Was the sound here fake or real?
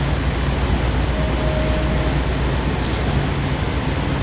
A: real